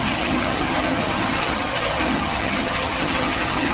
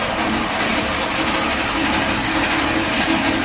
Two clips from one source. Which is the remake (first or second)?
first